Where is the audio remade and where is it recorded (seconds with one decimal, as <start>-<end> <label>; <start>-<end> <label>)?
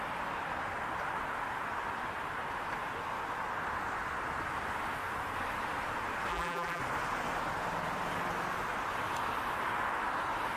0.0-6.3 recorded; 6.3-6.8 remade; 6.8-10.6 recorded